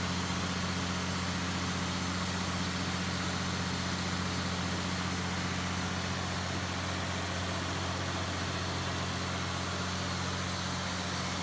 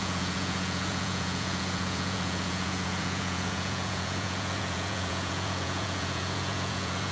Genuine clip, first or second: first